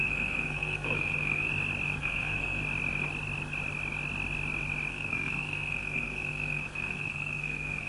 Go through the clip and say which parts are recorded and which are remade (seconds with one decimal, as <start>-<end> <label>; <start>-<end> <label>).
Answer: 0.0-1.5 remade; 1.5-2.0 recorded; 2.0-2.6 remade; 2.6-4.9 recorded; 4.9-7.9 remade